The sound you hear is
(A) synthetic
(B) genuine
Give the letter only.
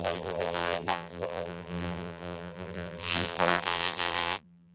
A